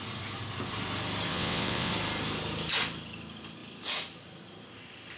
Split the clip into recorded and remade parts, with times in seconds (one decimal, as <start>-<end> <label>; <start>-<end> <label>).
0.0-1.3 recorded; 1.3-1.9 remade; 1.9-5.2 recorded